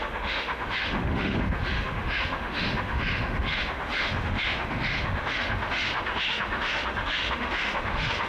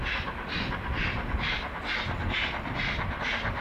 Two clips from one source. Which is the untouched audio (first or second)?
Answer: second